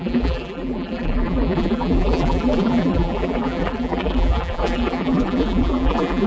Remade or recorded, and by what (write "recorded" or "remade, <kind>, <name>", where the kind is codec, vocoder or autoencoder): remade, vocoder, BigVGAN v2